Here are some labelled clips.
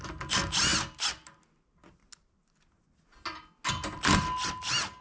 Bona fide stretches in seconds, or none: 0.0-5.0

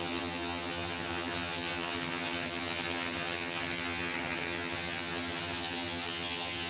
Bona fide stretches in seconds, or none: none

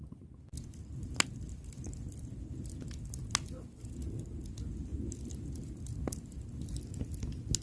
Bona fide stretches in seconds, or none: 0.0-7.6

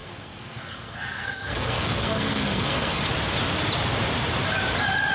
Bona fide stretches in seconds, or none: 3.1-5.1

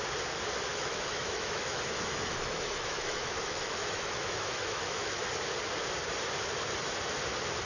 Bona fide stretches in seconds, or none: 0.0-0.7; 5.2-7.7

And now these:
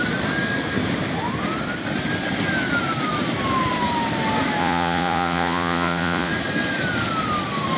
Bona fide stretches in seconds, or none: 0.0-4.6; 6.3-7.8

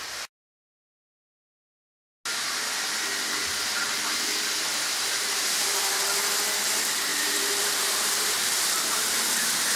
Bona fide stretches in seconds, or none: 0.0-4.7; 6.0-7.1; 9.4-9.8

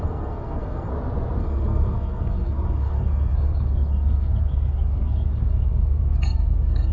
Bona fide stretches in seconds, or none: 0.9-1.4